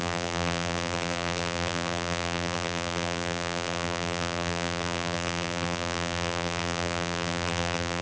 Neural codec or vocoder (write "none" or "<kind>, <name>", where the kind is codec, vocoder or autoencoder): vocoder, BigVGAN v2